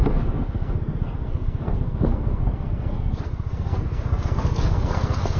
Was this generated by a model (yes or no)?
yes